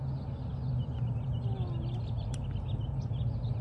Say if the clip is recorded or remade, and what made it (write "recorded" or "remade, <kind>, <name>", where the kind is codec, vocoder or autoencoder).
recorded